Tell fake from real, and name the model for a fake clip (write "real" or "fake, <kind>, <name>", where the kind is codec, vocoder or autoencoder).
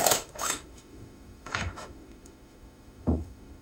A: fake, autoencoder, DAC-VAE